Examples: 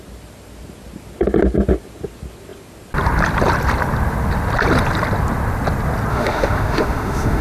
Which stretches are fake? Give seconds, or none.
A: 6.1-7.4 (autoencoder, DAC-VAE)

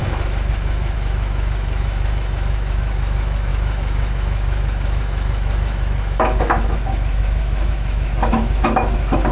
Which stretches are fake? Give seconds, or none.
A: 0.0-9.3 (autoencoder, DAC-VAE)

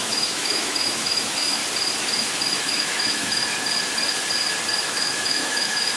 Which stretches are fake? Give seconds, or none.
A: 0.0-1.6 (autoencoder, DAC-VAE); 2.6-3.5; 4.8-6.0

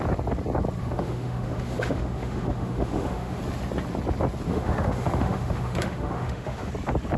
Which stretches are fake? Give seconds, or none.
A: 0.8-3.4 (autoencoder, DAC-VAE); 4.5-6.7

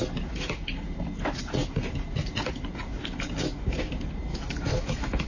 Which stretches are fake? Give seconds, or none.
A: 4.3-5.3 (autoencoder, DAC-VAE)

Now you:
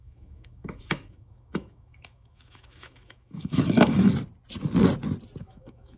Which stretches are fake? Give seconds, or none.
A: 0.0-4.1 (autoencoder, DAC-VAE); 5.4-6.0